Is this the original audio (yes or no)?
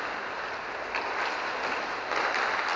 yes